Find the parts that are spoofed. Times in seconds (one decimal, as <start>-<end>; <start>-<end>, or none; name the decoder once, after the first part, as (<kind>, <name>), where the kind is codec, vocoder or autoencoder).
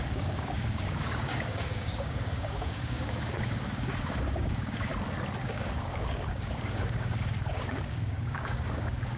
0.0-4.9 (codec, DAC); 5.4-9.2